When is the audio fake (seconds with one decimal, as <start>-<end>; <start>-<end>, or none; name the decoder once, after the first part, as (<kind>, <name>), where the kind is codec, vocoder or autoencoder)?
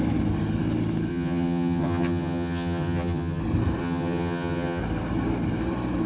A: 1.1-3.4 (vocoder, HiFi-GAN); 3.8-4.8